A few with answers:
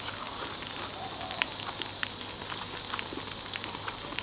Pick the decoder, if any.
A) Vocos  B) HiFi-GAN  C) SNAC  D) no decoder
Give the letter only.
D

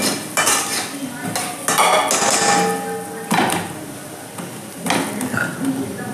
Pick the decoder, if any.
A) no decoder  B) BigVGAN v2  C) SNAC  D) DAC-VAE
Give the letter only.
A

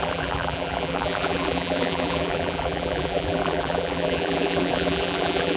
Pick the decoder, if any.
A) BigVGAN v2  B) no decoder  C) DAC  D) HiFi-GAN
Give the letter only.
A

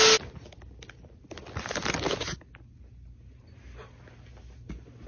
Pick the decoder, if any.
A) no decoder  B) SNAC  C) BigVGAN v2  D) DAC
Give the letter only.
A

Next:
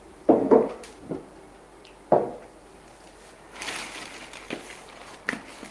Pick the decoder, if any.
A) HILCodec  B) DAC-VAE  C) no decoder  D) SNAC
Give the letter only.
C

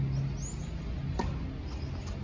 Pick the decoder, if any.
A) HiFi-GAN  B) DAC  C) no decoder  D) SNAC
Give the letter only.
C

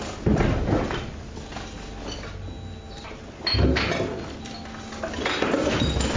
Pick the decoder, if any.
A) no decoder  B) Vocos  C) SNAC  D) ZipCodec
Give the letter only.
A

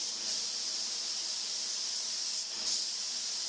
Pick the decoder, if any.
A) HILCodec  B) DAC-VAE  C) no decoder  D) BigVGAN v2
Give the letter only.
D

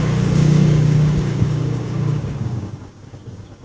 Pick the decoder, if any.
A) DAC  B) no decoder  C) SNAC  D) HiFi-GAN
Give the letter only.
A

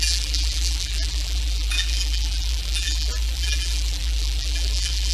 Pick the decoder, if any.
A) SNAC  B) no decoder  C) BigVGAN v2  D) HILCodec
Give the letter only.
C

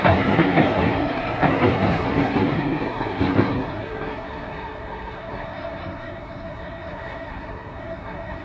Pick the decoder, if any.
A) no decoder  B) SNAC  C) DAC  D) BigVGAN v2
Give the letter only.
B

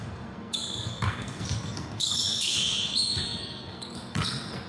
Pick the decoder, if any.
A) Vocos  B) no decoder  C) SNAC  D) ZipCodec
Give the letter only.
C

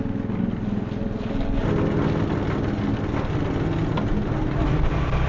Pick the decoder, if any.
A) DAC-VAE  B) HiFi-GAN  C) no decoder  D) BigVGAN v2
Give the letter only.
C